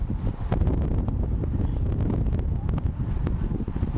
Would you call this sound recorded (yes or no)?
yes